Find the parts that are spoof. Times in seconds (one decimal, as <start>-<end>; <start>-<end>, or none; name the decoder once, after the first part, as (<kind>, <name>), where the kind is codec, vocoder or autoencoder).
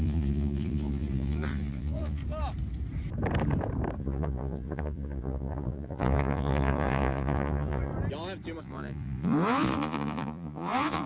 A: 0.0-2.2 (vocoder, Vocos); 4.0-7.9; 8.6-11.1